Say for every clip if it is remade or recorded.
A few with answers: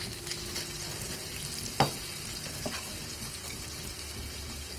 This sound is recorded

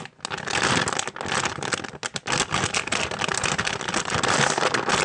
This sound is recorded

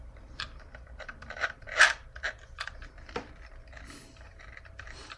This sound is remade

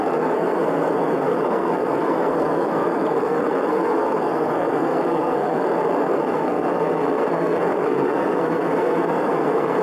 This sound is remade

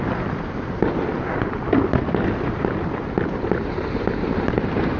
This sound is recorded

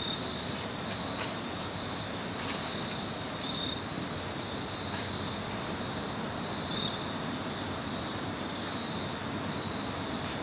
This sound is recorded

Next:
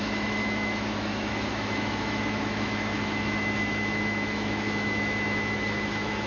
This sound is remade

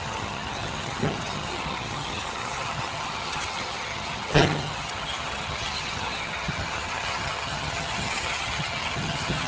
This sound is remade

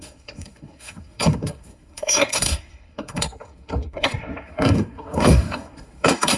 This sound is remade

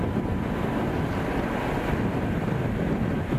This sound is recorded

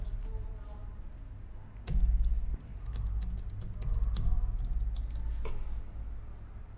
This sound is recorded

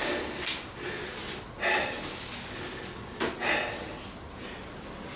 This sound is recorded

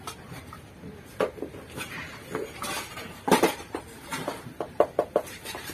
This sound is remade